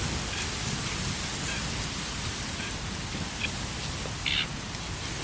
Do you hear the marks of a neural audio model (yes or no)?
no